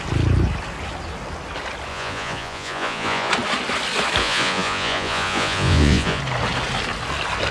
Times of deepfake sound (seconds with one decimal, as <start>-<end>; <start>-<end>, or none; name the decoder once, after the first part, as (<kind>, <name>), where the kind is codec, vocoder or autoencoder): 1.9-3.3 (vocoder, Vocos); 4.2-6.2